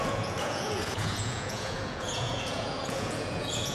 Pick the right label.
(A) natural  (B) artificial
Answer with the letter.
B